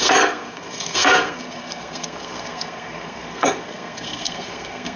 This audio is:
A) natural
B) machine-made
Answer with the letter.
B